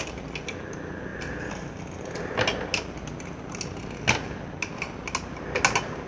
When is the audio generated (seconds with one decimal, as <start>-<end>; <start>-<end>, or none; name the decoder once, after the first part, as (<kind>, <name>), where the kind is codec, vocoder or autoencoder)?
none